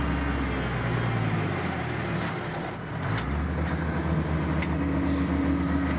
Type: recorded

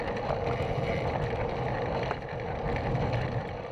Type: remade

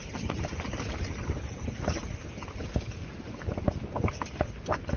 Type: recorded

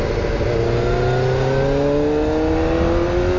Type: recorded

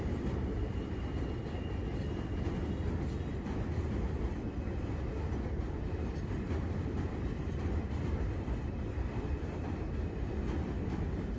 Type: remade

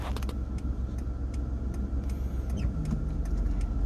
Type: recorded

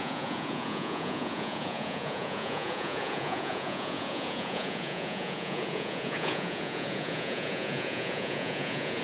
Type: remade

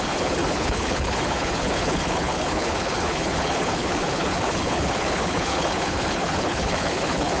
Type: remade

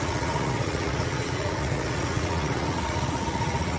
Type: remade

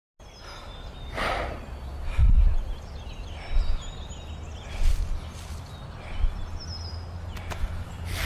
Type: recorded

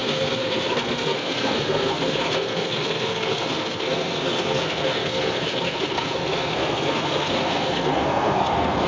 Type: remade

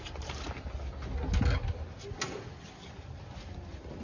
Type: recorded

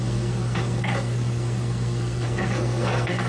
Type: remade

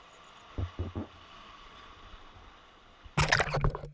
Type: recorded